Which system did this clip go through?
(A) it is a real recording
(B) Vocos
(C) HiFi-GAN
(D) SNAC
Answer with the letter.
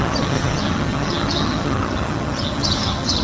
C